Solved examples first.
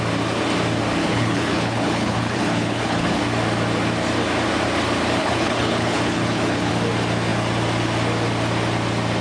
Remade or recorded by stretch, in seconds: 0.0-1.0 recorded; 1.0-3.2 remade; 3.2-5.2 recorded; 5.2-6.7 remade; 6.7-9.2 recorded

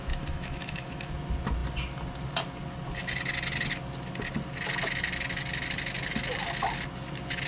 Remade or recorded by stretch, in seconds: 0.0-1.1 remade; 1.1-7.5 recorded

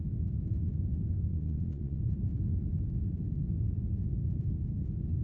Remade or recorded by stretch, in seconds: 0.0-1.3 recorded; 1.3-2.0 remade; 2.0-5.2 recorded

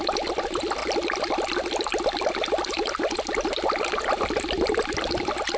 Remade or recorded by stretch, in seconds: 0.0-5.6 recorded

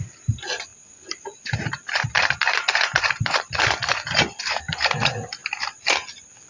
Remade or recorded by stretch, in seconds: 0.0-0.7 remade; 0.7-4.6 recorded; 4.6-5.4 remade; 5.4-6.5 recorded

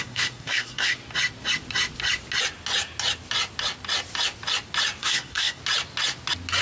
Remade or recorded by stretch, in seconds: 0.0-1.0 remade; 1.0-5.0 recorded; 5.0-5.6 remade; 5.6-6.6 recorded

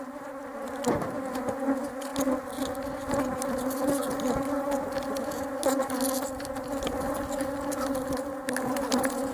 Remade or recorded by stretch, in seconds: 0.0-9.3 recorded

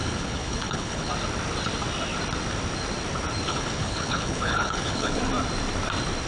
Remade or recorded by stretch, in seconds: 0.0-1.1 remade; 1.1-3.5 recorded; 3.5-5.2 remade; 5.2-6.3 recorded